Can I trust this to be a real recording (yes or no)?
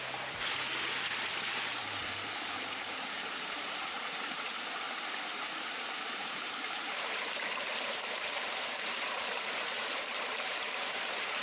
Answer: no